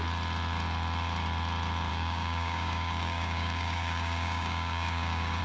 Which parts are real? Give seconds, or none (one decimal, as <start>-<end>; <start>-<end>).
0.0-1.9